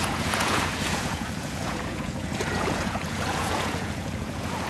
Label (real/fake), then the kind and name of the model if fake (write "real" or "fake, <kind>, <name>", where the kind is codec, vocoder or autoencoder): fake, vocoder, Vocos